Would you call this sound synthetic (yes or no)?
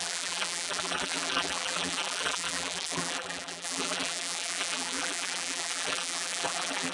yes